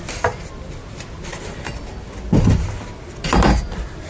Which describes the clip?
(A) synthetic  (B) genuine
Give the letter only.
B